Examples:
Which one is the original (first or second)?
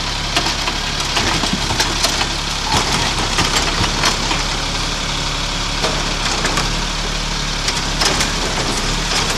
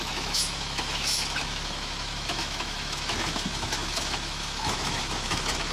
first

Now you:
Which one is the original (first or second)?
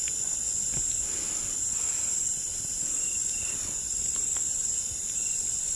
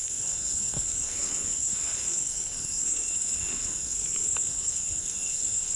first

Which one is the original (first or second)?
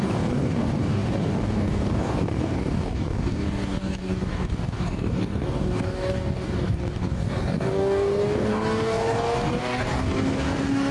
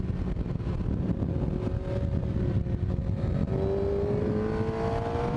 second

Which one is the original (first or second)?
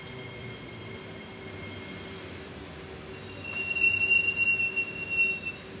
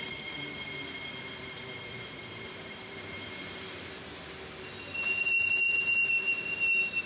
first